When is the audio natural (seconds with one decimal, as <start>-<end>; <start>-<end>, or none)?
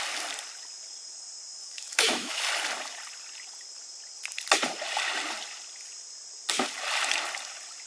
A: 0.0-1.6; 2.4-7.9